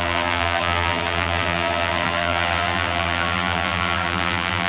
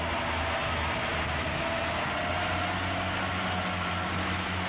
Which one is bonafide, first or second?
second